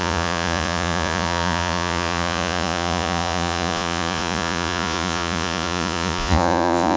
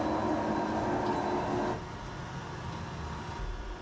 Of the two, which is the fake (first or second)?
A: first